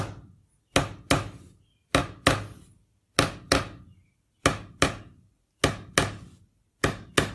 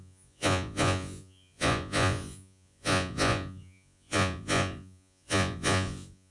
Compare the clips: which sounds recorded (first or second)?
first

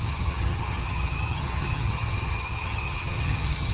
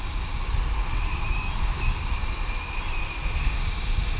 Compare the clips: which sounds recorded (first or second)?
second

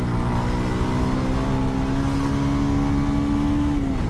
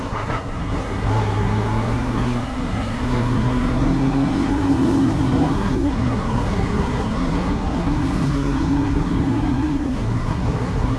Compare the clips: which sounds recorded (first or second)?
first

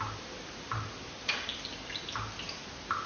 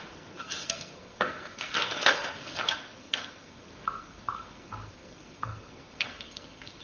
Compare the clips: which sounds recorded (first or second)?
first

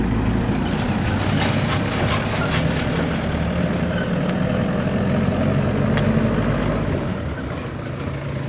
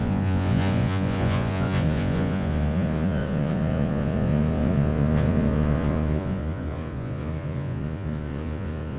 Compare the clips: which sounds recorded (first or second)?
first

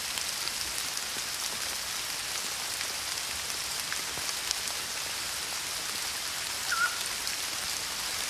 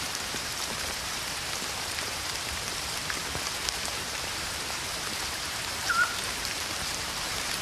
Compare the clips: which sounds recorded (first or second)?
first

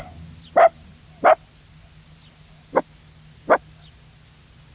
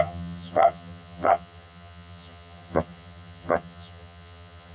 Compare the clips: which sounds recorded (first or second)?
first